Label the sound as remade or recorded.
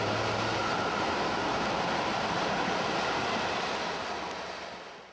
recorded